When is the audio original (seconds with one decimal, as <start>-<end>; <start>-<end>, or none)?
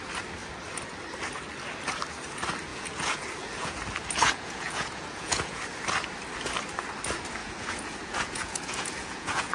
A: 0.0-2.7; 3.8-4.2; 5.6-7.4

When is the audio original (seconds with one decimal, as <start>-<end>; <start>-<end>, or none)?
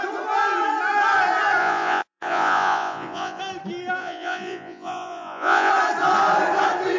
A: 0.0-1.6; 3.4-4.0; 5.7-7.0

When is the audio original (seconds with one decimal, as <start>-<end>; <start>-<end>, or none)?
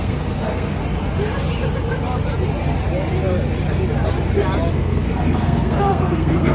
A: 0.8-4.7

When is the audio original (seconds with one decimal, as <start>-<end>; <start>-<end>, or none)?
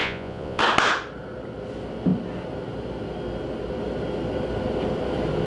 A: 0.6-5.5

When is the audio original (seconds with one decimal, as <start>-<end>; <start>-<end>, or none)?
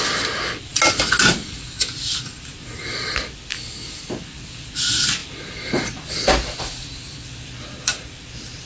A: 0.0-8.7